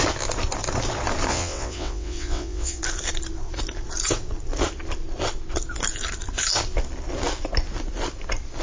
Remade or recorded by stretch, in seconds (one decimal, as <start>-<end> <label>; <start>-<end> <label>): 0.0-1.3 recorded; 1.3-2.8 remade; 2.8-8.6 recorded